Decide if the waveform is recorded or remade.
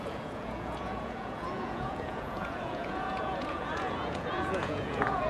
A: remade